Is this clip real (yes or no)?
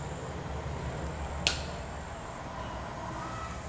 yes